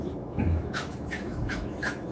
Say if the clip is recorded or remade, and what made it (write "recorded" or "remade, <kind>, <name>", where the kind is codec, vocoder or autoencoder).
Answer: remade, autoencoder, DAC-VAE